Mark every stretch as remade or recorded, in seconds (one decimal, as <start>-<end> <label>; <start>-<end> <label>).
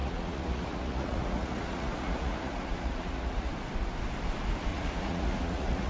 0.0-3.5 remade; 3.5-4.7 recorded; 4.7-5.9 remade